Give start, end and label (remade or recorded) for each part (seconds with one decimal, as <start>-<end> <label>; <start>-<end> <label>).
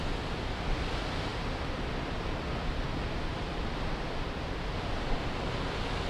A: 0.0-6.1 recorded